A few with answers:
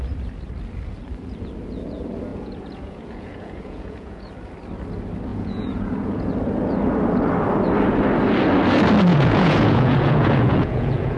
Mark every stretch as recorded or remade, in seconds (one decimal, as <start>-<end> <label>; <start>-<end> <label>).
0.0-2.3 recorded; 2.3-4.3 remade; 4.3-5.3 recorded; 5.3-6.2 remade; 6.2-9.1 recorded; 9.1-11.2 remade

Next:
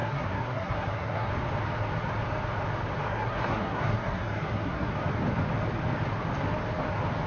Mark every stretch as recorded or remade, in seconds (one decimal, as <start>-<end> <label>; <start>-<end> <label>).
0.0-1.3 remade; 1.3-3.1 recorded; 3.1-4.9 remade; 4.9-7.3 recorded

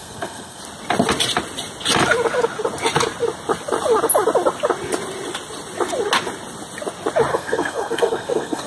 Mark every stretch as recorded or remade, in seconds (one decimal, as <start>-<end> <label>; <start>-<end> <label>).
0.0-0.6 remade; 0.6-7.3 recorded; 7.3-8.7 remade

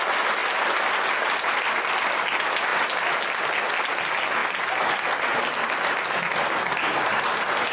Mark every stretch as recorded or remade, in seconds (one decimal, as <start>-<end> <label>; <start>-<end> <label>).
0.0-7.7 recorded

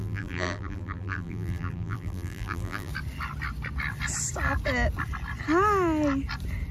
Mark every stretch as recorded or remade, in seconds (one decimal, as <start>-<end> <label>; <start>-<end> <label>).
0.0-2.9 remade; 2.9-6.7 recorded